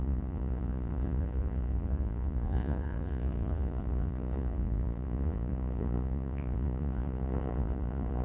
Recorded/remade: remade